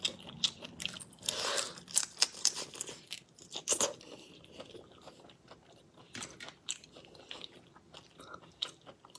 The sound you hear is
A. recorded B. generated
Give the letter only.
A